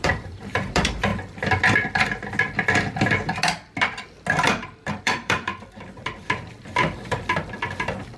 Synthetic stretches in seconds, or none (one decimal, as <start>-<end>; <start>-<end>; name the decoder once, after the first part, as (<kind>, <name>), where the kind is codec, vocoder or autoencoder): 0.0-1.1 (vocoder, BigVGAN v2); 5.0-5.5